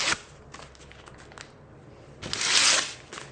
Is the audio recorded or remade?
recorded